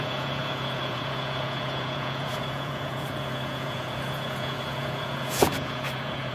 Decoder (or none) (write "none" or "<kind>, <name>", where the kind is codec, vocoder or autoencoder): vocoder, Vocos